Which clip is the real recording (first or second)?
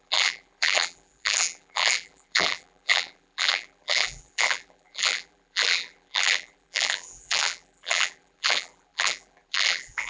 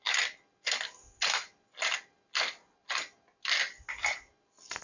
second